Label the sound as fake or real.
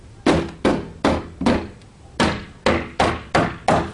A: real